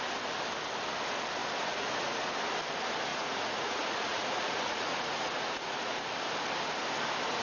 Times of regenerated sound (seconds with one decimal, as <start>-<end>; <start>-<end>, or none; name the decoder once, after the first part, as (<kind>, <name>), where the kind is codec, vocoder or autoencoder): 1.4-2.3 (vocoder, Vocos); 3.1-6.1